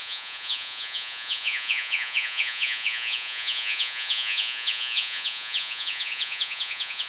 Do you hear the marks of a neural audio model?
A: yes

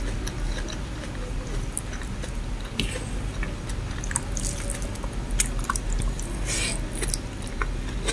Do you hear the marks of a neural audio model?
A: no